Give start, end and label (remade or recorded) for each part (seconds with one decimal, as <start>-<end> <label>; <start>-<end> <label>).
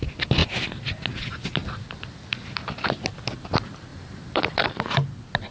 0.0-3.9 recorded; 3.9-4.8 remade; 4.8-5.5 recorded